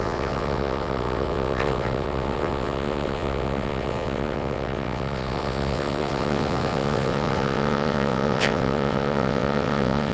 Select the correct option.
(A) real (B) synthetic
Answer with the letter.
B